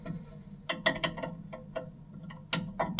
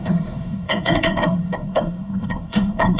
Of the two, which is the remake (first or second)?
second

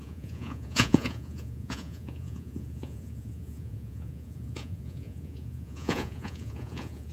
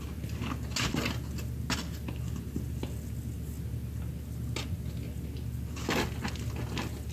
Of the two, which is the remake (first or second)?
first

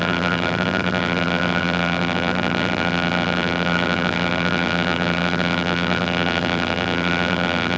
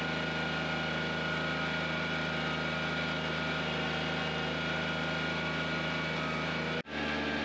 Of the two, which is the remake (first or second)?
first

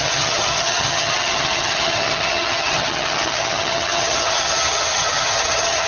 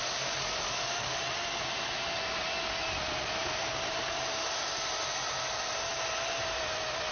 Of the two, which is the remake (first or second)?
first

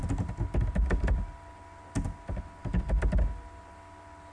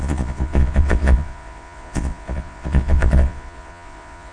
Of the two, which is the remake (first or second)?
second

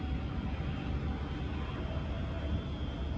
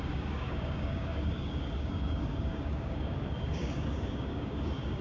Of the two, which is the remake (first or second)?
second